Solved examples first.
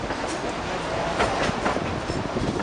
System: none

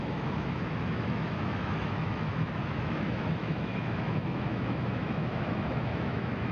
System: autoencoder, DAC-VAE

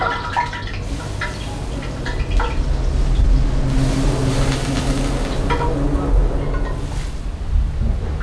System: none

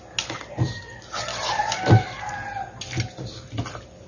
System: none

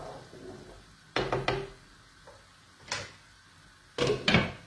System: none